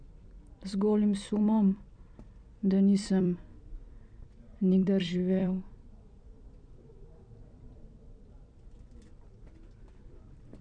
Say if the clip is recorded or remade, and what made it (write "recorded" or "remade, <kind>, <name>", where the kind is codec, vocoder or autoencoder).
remade, vocoder, BigVGAN v2